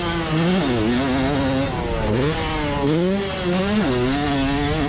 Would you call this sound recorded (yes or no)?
yes